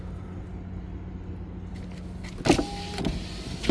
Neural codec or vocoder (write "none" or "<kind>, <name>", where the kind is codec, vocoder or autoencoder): none